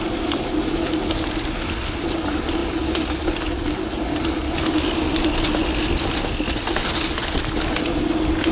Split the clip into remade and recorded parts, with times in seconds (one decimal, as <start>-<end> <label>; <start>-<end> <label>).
0.0-8.5 recorded